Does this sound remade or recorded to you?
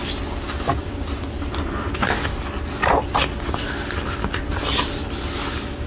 recorded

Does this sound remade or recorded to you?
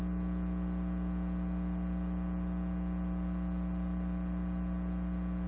recorded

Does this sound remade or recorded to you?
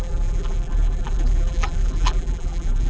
remade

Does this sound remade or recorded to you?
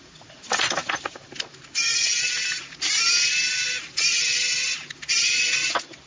recorded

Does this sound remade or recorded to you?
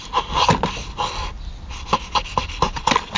recorded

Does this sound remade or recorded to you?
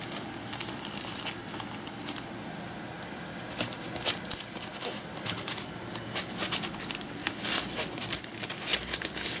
recorded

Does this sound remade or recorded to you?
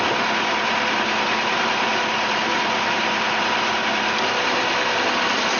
remade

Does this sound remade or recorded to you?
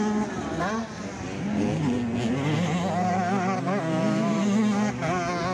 recorded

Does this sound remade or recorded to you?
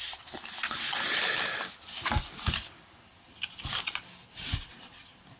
recorded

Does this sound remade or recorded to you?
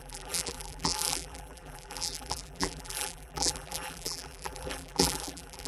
remade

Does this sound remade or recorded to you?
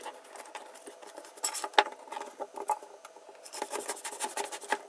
recorded